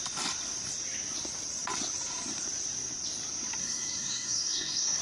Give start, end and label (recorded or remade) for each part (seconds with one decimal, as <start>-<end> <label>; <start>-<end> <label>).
0.0-3.6 recorded; 3.6-5.0 remade